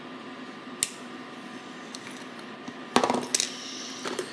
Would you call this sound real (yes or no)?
yes